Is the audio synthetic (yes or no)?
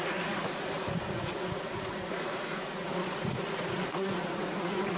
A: yes